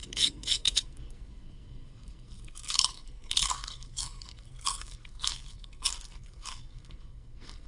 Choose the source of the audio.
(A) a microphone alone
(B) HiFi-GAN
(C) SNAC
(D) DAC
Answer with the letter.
C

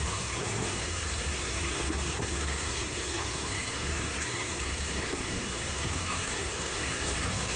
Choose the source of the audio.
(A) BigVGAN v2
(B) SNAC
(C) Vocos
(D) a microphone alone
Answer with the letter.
B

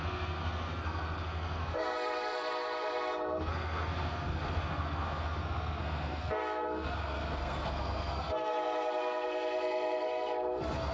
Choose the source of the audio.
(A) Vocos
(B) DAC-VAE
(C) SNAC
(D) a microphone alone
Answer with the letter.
C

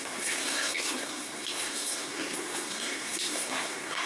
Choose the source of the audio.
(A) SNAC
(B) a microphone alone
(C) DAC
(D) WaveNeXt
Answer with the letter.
A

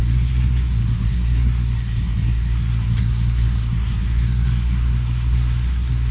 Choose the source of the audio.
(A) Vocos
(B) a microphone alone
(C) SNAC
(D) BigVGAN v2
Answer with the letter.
C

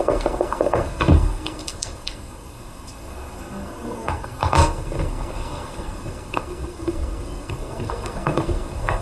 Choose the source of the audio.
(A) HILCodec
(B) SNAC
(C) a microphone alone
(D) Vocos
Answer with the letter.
B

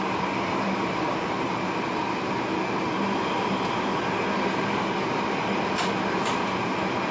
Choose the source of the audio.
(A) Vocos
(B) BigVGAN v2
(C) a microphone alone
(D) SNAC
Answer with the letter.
C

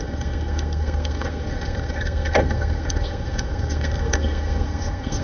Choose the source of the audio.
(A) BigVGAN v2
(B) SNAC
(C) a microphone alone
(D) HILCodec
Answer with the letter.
B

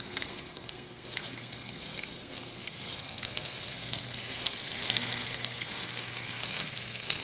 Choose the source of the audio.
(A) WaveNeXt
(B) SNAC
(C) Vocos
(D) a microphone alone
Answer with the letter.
B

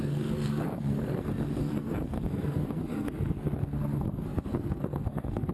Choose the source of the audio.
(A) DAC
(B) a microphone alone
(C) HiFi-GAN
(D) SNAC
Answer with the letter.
D